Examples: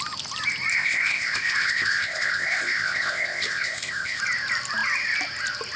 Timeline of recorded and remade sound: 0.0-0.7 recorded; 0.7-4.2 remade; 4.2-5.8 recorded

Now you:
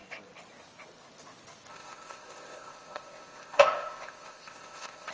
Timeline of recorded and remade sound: 0.0-1.7 recorded; 1.7-5.1 remade

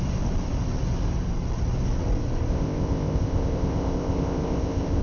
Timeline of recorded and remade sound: 0.0-2.5 recorded; 2.5-5.0 remade

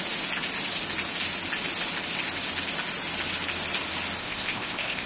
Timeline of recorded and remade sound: 0.0-4.2 recorded; 4.2-5.1 remade

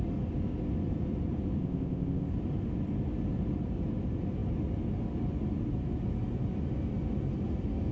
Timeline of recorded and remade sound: 0.0-1.6 recorded; 1.6-2.3 remade; 2.3-7.9 recorded

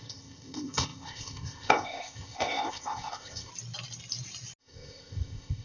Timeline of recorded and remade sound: 0.0-3.5 remade; 3.5-4.6 recorded; 4.6-5.6 remade

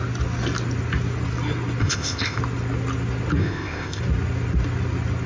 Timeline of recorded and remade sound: 0.0-1.8 recorded; 1.8-2.4 remade; 2.4-3.4 recorded; 3.4-4.0 remade; 4.0-5.3 recorded